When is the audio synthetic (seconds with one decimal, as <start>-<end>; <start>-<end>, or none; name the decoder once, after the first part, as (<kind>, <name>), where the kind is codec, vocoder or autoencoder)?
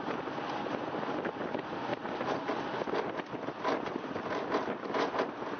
none